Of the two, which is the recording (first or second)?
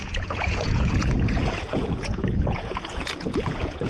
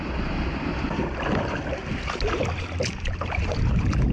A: second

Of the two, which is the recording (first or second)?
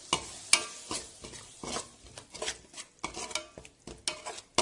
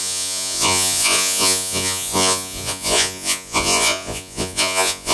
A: first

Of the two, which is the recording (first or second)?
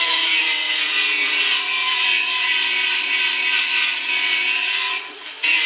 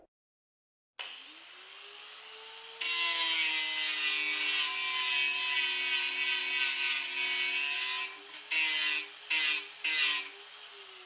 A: second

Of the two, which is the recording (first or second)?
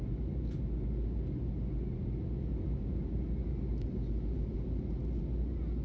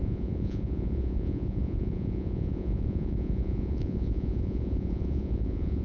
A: first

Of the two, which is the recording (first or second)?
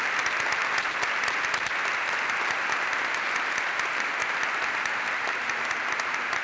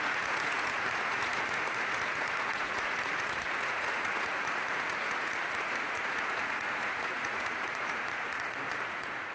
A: first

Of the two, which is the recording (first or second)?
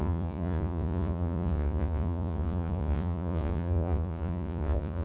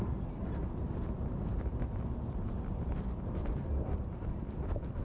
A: second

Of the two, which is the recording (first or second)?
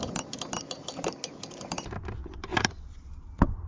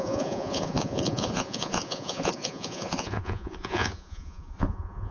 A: first